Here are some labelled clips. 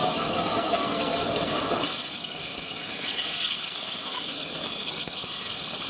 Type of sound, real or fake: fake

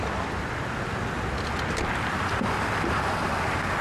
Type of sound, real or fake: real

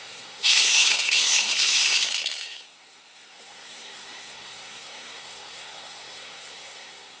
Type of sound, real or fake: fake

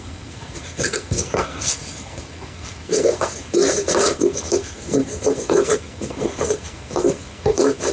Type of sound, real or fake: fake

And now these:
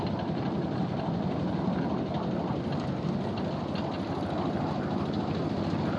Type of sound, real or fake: real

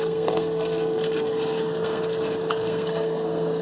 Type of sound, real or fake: fake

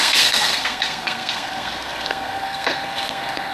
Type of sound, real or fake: fake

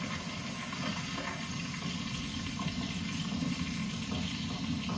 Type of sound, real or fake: real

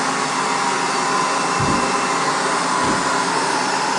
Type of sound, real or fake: real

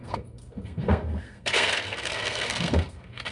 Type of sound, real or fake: fake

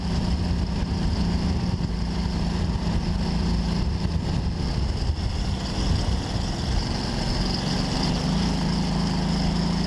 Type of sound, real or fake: real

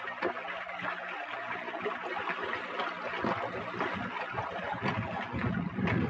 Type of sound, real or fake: real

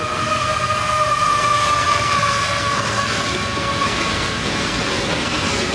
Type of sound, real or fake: fake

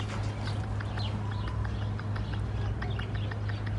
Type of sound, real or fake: real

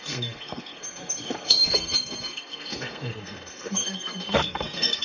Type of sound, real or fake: fake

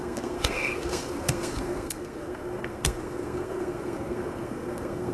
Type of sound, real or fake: fake